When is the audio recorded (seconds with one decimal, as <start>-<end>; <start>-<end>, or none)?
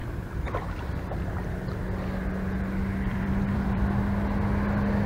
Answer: 0.6-3.1; 3.9-5.1